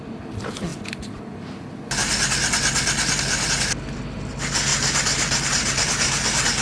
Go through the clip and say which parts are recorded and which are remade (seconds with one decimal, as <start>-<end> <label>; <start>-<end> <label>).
0.0-6.6 recorded